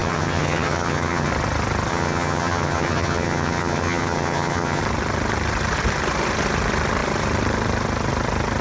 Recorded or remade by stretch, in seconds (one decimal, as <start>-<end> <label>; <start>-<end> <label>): 0.0-1.3 remade; 1.3-1.9 recorded; 1.9-4.8 remade; 4.8-8.6 recorded